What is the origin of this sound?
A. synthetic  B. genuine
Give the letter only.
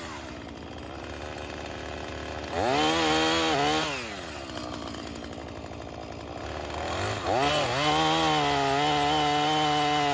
B